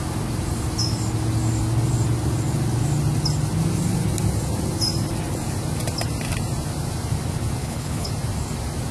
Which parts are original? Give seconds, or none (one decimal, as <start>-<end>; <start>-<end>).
0.0-7.6; 8.1-8.9